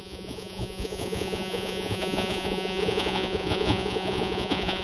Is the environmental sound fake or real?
fake